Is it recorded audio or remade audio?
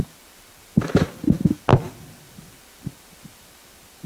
recorded